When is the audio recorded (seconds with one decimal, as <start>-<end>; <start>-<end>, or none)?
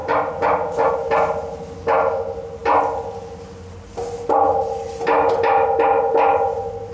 0.0-6.9